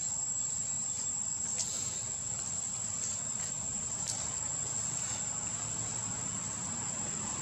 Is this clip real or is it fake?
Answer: real